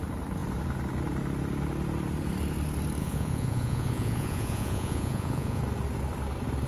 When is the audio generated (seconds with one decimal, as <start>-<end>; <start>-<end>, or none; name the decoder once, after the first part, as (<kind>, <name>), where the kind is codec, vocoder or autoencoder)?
3.0-5.6 (vocoder, Vocos)